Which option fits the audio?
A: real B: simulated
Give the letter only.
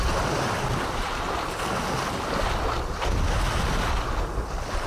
A